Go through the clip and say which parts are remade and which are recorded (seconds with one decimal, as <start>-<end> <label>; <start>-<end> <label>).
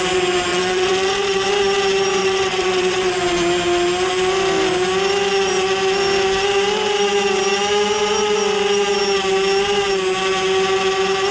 0.0-0.5 recorded; 0.5-1.5 remade; 1.5-2.2 recorded; 2.2-3.2 remade; 3.2-11.3 recorded